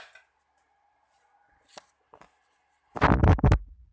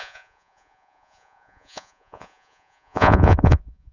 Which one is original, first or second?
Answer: first